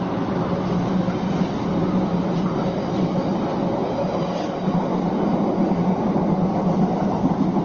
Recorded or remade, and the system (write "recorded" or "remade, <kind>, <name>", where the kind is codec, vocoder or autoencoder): remade, vocoder, BigVGAN v2